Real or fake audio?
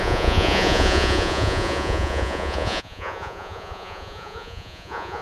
fake